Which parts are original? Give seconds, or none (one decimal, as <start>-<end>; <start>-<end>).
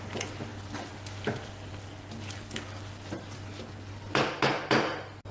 0.0-5.3